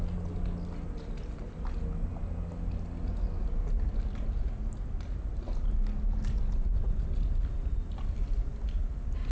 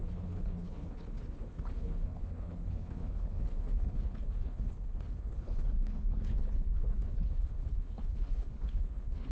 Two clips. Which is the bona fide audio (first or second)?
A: first